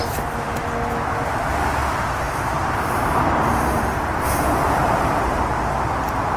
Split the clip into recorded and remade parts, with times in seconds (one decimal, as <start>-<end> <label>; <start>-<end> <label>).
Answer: 0.0-6.4 recorded